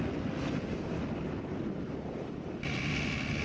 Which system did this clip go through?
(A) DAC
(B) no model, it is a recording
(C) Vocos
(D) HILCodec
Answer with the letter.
B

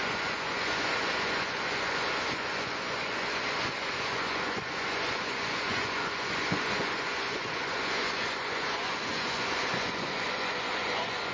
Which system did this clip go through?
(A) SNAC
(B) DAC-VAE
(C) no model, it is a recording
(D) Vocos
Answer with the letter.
D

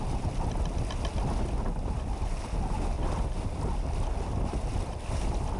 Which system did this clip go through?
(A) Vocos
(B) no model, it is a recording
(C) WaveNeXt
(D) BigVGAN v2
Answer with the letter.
B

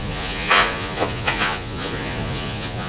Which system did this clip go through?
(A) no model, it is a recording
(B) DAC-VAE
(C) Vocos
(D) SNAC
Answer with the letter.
C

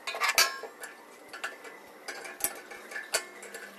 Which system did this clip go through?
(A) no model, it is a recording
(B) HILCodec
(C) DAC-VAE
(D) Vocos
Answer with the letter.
A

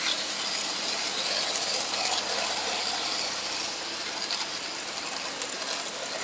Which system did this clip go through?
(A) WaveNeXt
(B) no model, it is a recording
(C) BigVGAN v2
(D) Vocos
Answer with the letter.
B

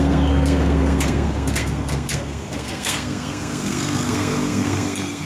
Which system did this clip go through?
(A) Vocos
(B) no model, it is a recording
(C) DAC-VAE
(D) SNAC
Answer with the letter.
D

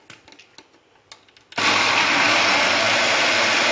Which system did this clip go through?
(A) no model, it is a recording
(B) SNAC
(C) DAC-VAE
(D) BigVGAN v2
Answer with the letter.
A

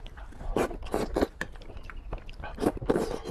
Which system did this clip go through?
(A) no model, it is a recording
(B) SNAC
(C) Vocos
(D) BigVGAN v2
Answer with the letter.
D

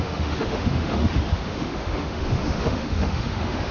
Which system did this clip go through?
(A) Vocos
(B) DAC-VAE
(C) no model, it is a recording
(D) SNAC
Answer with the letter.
B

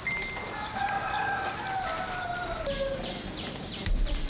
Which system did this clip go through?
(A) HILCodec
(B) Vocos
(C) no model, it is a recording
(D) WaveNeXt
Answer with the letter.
C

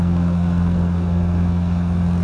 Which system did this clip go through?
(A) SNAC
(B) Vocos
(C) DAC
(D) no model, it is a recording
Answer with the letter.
A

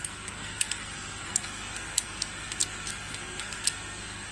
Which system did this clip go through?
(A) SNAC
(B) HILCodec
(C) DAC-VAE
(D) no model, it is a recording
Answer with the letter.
A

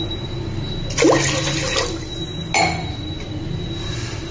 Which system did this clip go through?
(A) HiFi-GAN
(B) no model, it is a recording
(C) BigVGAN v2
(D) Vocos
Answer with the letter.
B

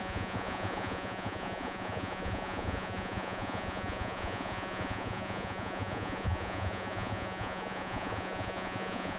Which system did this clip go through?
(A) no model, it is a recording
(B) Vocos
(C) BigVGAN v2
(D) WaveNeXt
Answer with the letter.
B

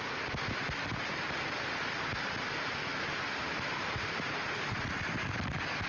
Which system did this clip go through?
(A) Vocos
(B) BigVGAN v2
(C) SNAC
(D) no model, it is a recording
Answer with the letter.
D